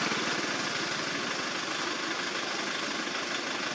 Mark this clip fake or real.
real